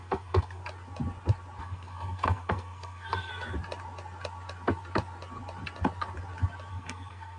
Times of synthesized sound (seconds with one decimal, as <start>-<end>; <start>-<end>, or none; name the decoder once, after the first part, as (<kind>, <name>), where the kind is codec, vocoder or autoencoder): 0.0-0.6 (codec, SNAC); 1.6-3.3; 6.7-7.4